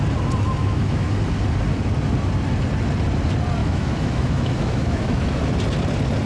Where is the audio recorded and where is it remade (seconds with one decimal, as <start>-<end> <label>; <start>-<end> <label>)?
0.0-0.6 recorded; 0.6-1.1 remade; 1.1-3.6 recorded; 3.6-5.4 remade; 5.4-6.3 recorded